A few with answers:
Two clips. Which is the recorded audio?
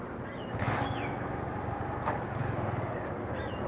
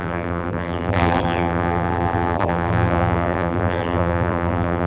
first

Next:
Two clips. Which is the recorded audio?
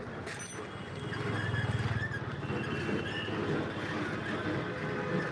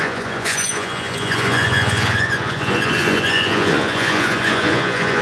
first